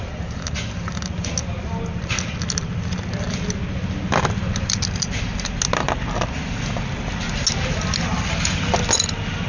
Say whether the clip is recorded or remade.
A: recorded